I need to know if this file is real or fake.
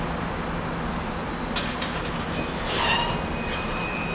real